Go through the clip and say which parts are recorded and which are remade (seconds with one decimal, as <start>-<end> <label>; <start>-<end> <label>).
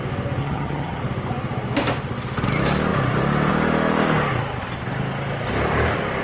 0.0-0.4 recorded; 0.4-1.0 remade; 1.0-6.2 recorded